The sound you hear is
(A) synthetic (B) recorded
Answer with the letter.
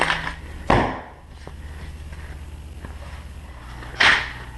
B